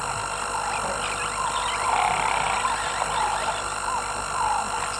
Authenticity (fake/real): real